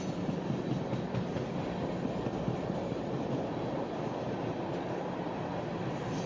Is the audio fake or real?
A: real